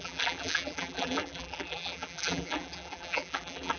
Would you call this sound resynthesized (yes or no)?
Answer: yes